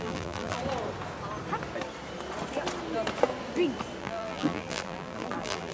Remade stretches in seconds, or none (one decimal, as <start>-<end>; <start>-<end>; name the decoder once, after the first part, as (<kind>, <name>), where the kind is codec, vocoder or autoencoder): 0.0-0.6 (vocoder, BigVGAN v2); 4.0-5.7